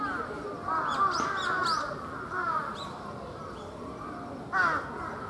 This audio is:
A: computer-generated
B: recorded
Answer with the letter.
B